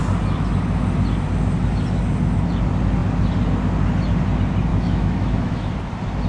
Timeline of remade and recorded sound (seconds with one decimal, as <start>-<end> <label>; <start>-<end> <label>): 0.0-4.7 recorded; 4.7-5.7 remade; 5.7-6.3 recorded